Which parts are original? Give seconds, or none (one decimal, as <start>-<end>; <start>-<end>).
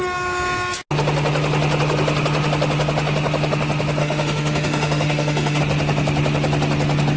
0.0-4.0; 5.6-7.2